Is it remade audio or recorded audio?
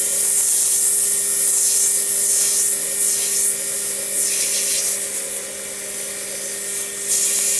recorded